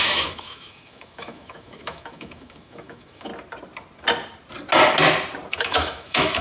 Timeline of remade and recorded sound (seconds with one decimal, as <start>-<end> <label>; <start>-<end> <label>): 0.0-3.3 remade; 3.3-5.5 recorded; 5.5-6.4 remade